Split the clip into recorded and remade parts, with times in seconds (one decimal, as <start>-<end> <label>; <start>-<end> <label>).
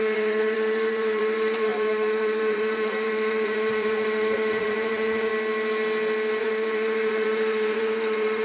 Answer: 0.0-5.3 remade; 5.3-6.4 recorded; 6.4-8.4 remade